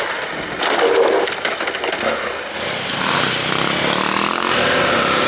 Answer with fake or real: real